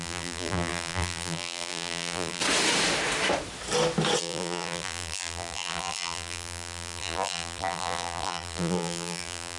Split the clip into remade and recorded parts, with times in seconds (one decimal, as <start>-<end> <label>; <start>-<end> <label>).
0.0-2.4 remade; 2.4-4.2 recorded; 4.2-9.6 remade